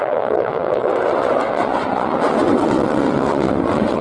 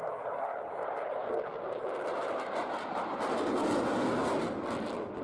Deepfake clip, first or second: first